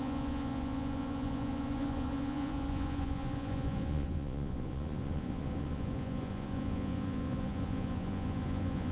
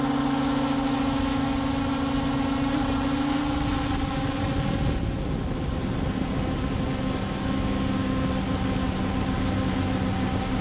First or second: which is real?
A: second